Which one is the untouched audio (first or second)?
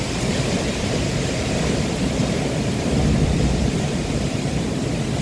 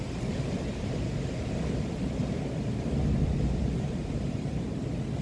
second